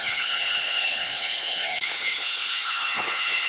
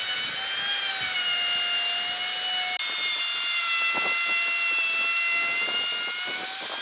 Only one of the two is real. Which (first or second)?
second